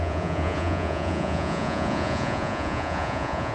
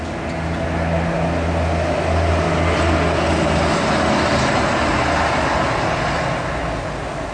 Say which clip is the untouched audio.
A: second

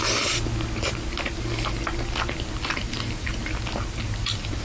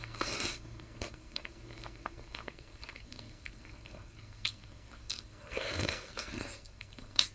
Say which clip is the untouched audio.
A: first